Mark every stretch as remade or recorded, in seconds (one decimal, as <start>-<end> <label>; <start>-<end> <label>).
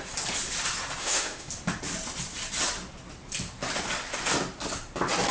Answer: 0.0-1.0 recorded; 1.0-1.5 remade; 1.5-5.3 recorded